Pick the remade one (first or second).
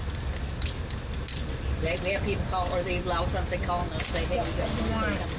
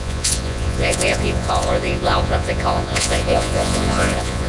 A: second